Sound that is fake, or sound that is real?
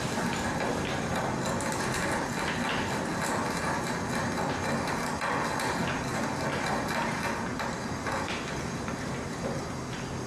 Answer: real